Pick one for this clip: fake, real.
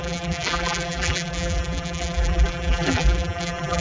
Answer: fake